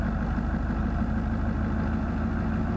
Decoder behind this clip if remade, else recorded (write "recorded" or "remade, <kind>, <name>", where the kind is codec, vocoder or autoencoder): recorded